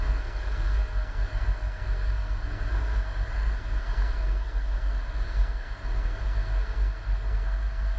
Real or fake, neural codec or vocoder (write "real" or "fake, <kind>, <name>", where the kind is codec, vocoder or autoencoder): fake, codec, SNAC